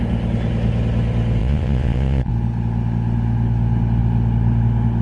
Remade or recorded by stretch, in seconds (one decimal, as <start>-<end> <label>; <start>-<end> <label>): 0.0-1.4 recorded; 1.4-2.3 remade; 2.3-5.0 recorded